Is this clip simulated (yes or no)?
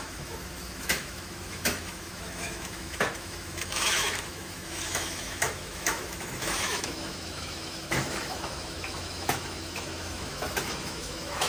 yes